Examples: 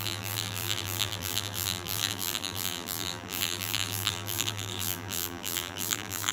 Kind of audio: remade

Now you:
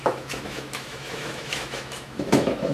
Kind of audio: remade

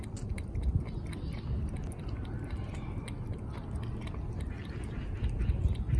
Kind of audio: recorded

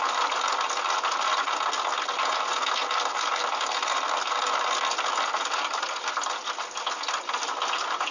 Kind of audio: recorded